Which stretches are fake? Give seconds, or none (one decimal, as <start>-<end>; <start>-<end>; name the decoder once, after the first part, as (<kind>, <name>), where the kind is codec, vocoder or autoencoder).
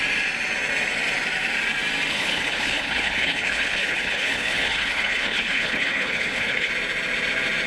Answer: 2.1-6.7 (codec, HILCodec)